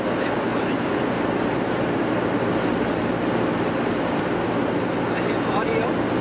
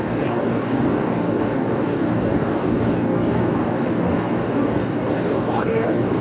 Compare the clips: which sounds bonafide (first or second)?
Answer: first